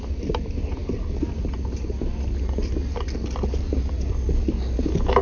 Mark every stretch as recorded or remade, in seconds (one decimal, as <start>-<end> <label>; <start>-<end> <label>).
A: 0.0-5.2 recorded